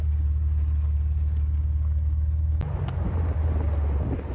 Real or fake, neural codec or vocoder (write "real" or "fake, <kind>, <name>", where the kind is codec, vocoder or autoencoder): real